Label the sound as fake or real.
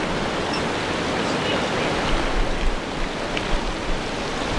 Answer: fake